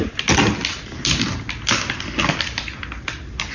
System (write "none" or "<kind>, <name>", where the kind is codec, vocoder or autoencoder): none